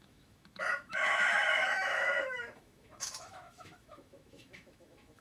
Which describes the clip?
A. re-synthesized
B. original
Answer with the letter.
A